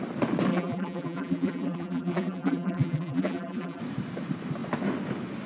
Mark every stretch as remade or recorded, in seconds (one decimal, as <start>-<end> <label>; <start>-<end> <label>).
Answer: 0.0-0.5 recorded; 0.5-3.8 remade; 3.8-5.5 recorded